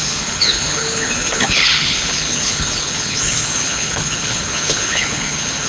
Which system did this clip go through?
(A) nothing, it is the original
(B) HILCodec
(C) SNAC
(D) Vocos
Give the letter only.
B